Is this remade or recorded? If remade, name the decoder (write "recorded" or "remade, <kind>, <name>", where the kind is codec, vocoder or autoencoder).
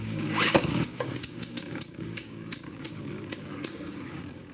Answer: remade, codec, DAC